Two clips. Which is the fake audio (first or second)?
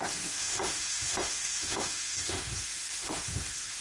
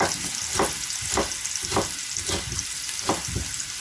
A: first